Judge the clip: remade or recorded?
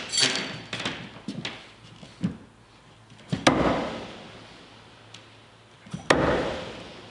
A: recorded